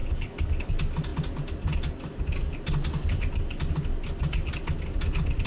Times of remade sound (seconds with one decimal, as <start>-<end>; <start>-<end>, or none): 0.0-0.7